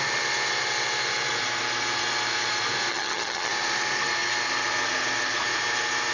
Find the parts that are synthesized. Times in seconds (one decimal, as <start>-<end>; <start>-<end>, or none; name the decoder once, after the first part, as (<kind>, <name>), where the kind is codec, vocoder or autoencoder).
2.9-3.5 (vocoder, HiFi-GAN)